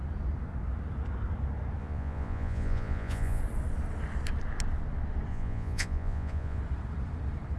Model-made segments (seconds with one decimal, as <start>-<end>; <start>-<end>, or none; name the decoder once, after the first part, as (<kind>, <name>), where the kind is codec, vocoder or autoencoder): 1.8-3.4 (vocoder, Vocos); 5.3-6.6